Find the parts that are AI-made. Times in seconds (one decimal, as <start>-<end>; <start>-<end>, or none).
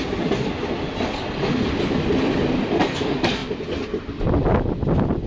none